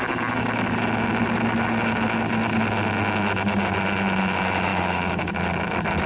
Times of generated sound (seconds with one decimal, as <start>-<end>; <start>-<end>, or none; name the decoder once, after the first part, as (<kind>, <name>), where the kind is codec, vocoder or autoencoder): 4.7-5.3 (autoencoder, DAC-VAE)

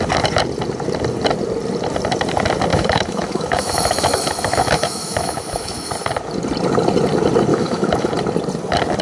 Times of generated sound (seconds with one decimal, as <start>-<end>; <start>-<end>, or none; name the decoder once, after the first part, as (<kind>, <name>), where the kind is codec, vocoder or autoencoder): 2.7-5.9 (autoencoder, DAC-VAE); 7.5-8.1

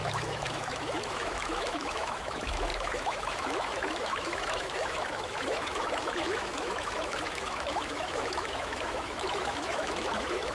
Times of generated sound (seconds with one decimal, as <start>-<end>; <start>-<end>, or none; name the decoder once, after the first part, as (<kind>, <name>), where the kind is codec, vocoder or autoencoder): 0.0-10.5 (autoencoder, DAC-VAE)

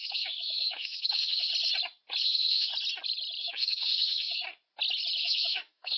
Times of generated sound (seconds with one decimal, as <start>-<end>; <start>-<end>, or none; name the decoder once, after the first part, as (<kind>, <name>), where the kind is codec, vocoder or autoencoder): 0.0-1.5 (autoencoder, DAC-VAE); 2.2-2.7; 3.4-4.4; 5.2-6.0

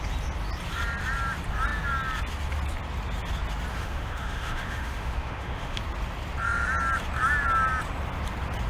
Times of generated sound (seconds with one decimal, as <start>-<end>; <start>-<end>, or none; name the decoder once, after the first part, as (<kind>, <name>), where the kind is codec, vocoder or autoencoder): 3.7-5.8 (autoencoder, DAC-VAE)